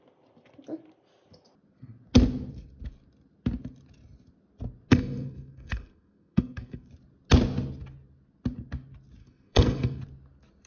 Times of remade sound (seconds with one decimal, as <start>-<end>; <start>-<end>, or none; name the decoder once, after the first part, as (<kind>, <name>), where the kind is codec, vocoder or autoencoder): 4.9-6.9 (codec, SNAC); 9.2-10.0